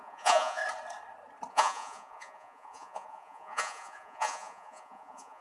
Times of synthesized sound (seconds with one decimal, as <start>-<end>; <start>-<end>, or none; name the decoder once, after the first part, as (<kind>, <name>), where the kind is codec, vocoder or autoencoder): 0.0-0.6 (vocoder, Vocos); 1.5-5.4